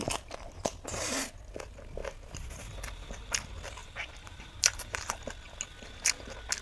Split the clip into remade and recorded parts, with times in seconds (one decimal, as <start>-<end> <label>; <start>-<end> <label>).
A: 0.0-3.8 recorded; 3.8-5.2 remade; 5.2-6.6 recorded